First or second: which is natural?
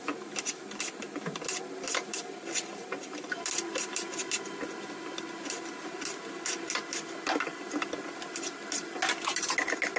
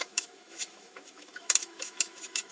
first